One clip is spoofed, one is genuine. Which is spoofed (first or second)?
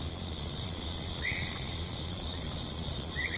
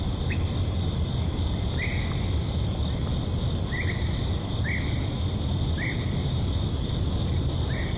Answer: first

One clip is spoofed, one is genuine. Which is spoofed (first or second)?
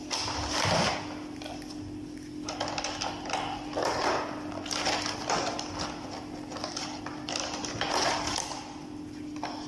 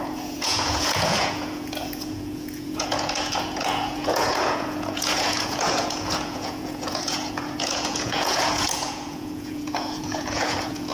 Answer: second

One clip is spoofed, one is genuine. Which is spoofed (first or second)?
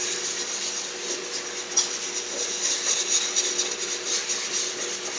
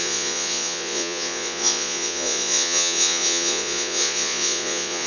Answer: second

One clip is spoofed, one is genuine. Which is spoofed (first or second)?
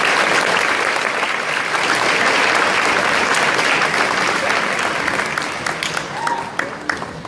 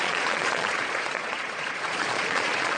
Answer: second